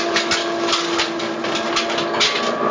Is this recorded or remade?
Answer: recorded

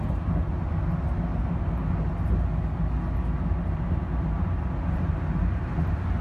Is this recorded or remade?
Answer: recorded